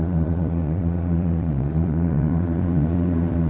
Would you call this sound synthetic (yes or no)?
yes